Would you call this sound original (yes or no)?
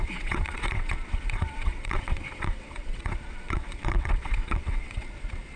no